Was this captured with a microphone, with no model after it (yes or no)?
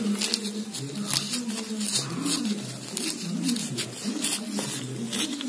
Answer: yes